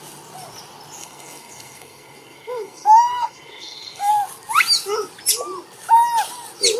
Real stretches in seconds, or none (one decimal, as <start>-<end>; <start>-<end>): 0.0-1.0; 4.1-6.8